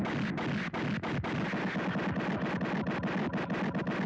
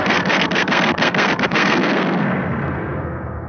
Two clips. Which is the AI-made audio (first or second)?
second